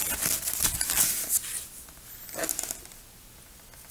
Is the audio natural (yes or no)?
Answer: yes